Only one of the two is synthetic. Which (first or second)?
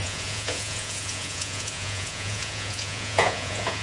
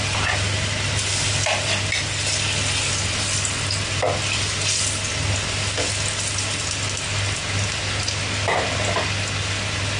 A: first